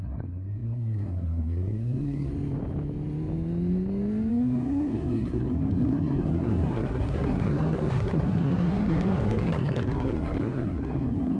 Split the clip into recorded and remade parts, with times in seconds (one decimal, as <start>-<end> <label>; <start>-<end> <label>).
0.0-2.3 remade; 2.3-4.3 recorded; 4.3-11.4 remade